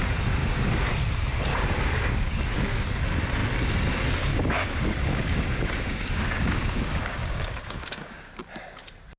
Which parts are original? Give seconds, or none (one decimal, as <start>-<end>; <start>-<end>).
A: 0.0-0.4; 0.9-1.5; 2.3-4.3; 8.3-9.2